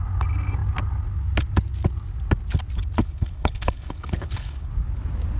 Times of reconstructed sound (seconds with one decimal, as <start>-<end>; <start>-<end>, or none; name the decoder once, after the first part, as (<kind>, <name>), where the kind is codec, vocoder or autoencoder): 3.0-4.7 (codec, HILCodec)